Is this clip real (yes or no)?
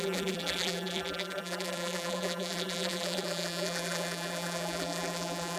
no